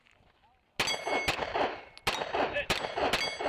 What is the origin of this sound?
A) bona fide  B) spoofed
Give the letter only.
A